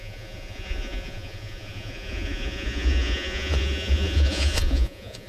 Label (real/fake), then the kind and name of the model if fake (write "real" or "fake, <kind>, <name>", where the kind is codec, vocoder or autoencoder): fake, vocoder, Vocos